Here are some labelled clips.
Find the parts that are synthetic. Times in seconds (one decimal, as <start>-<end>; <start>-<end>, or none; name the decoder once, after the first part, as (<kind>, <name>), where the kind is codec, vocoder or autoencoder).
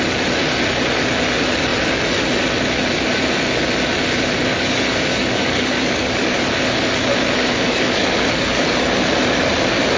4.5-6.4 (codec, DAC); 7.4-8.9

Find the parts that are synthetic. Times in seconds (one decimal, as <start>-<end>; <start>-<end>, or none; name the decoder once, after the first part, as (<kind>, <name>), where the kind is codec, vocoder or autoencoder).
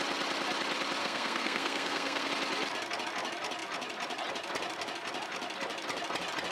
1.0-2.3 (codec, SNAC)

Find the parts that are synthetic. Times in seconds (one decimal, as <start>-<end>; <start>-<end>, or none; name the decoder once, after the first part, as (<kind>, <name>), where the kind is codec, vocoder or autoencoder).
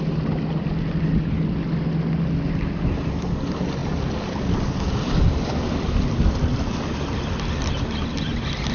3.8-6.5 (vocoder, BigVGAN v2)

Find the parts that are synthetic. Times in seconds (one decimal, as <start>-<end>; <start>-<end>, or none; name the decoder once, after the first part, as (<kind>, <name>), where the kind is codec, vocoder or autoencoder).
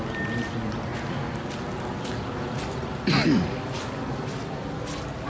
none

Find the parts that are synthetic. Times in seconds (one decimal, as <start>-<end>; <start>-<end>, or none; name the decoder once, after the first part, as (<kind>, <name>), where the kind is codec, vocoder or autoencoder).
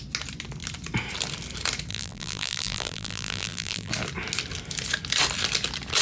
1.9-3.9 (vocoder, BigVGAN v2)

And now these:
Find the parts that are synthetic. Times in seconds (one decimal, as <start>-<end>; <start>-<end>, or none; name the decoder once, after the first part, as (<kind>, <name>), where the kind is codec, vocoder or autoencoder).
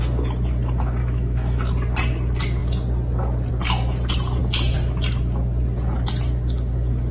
1.0-1.6 (autoencoder, DAC-VAE)